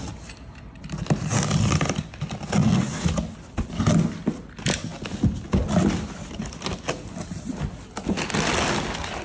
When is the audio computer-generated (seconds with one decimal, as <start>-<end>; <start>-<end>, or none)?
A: none